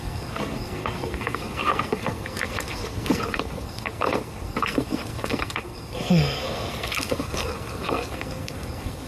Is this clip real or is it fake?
fake